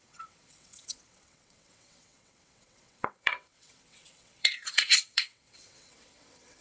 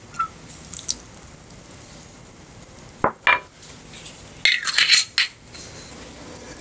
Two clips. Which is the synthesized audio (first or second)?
first